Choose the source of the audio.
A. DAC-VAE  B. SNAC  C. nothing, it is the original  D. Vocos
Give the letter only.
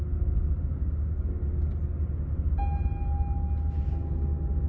C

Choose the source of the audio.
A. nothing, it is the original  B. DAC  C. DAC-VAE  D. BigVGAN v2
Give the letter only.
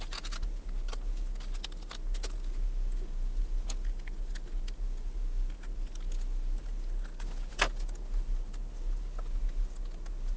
A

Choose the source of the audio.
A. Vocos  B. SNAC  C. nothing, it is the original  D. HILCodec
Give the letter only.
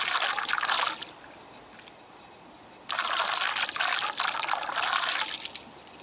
C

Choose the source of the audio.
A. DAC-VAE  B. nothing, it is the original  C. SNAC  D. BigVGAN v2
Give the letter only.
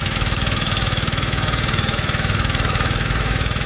A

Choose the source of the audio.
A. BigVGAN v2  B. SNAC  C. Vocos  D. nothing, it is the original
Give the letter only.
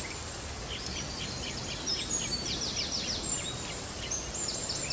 D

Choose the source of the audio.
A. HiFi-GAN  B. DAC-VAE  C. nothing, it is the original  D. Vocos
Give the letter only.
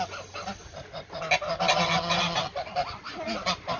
C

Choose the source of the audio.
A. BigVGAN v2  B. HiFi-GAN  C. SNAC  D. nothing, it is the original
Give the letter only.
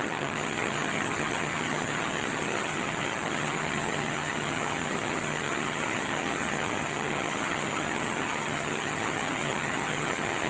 B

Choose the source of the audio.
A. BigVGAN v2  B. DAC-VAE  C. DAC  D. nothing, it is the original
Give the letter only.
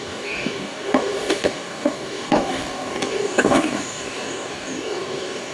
C